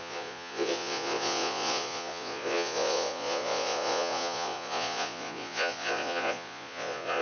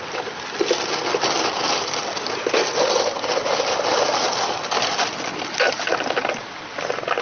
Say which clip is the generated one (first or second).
first